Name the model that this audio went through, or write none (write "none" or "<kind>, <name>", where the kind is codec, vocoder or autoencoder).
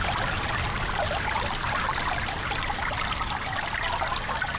none